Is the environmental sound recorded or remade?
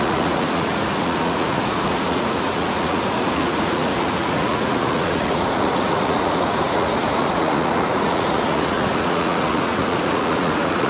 remade